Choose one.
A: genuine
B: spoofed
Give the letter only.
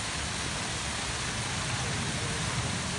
A